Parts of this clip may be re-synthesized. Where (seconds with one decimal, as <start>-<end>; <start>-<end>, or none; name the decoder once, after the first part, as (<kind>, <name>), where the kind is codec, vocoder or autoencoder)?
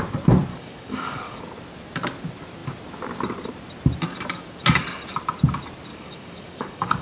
0.5-1.4 (codec, DAC); 5.9-7.0